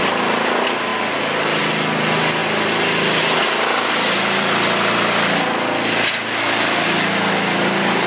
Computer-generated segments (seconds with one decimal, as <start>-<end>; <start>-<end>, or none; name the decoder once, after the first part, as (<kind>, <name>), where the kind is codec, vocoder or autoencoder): none

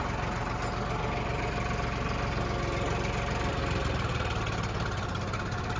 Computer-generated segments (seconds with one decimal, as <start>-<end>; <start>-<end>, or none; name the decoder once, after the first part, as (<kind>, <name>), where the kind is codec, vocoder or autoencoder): none